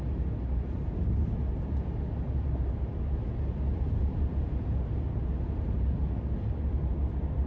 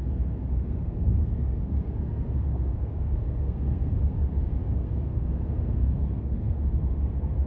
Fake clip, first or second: second